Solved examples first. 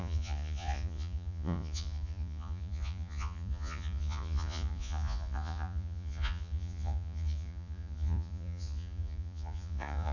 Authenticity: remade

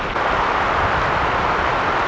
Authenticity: recorded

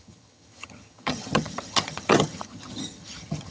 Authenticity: remade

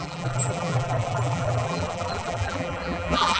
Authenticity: remade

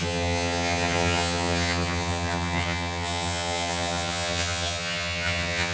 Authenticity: remade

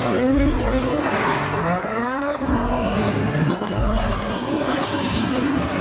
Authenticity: remade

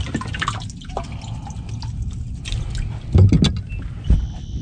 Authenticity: recorded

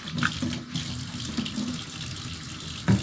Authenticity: recorded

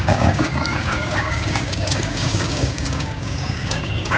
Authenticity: remade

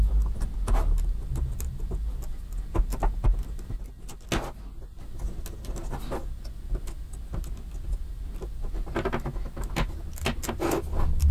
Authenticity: recorded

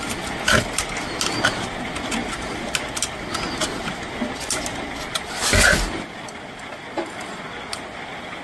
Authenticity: recorded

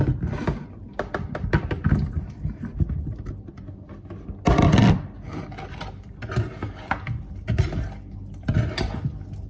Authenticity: recorded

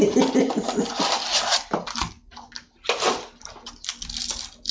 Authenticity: recorded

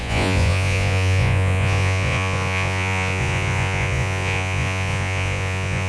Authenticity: remade